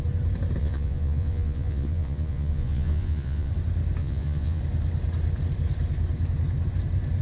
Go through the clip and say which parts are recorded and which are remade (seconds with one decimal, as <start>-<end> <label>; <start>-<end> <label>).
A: 0.0-0.6 recorded; 0.6-3.5 remade; 3.5-4.0 recorded; 4.0-4.6 remade; 4.6-7.2 recorded